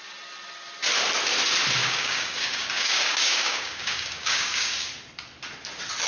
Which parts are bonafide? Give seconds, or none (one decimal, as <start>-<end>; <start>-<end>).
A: 0.0-1.8; 4.9-6.1